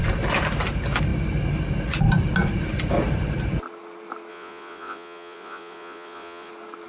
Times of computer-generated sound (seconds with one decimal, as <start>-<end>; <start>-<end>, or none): 4.3-6.5